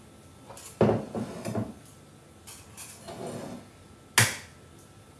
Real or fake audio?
real